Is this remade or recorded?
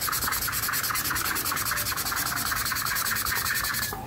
recorded